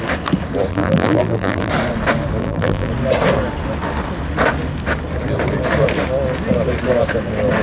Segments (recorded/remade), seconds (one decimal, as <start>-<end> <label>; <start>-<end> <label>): 0.0-0.7 recorded; 0.7-1.7 remade; 1.7-2.4 recorded; 2.4-2.9 remade; 2.9-7.6 recorded